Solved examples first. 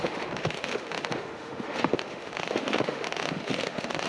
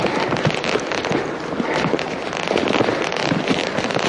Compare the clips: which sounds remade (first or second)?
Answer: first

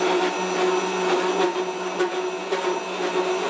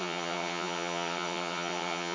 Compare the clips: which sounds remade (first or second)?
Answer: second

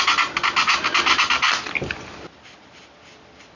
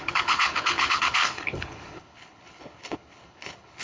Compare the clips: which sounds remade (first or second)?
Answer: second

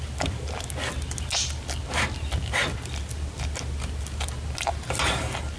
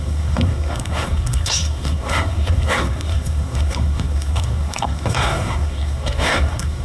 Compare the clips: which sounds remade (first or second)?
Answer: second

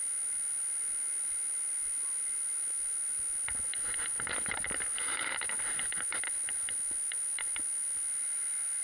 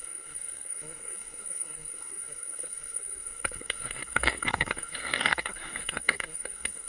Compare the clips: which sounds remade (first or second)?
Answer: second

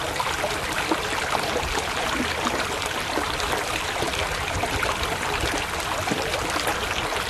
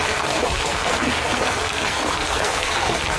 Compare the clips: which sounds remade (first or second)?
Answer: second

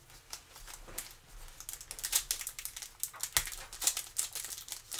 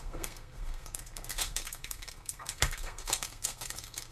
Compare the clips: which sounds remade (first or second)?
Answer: second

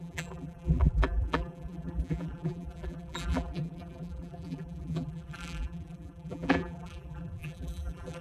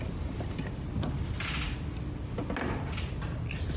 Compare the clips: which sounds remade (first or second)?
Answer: first